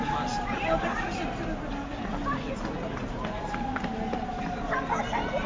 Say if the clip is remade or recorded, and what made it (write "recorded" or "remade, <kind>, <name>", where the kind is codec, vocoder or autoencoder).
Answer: recorded